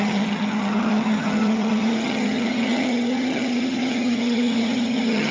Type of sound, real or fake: fake